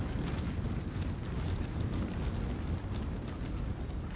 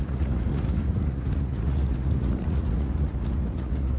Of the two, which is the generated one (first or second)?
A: second